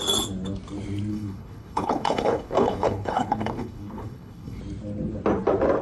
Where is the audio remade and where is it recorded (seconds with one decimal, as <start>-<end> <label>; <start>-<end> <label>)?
0.0-1.1 recorded; 1.1-4.6 remade; 4.6-5.8 recorded